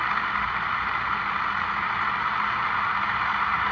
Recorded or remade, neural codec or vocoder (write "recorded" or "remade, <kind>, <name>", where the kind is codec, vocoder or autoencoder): remade, vocoder, BigVGAN v2